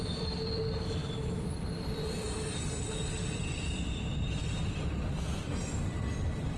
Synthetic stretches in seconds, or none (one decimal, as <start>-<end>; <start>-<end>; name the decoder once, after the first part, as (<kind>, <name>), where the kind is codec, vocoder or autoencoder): 0.0-6.6 (vocoder, BigVGAN v2)